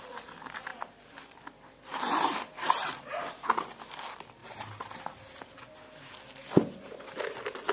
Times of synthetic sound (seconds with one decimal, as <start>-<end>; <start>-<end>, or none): none